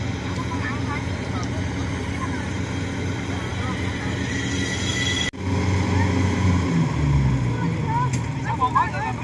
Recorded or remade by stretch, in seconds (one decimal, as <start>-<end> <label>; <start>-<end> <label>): 0.0-9.2 recorded